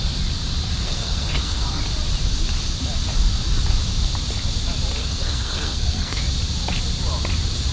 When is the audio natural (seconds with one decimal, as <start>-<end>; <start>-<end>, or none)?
0.0-0.8; 1.8-5.0; 6.2-7.7